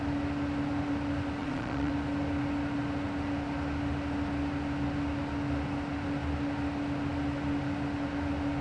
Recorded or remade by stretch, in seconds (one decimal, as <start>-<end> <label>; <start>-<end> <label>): 0.0-1.4 recorded; 1.4-1.9 remade; 1.9-8.6 recorded